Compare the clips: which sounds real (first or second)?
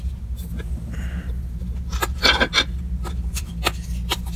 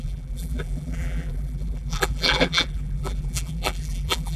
first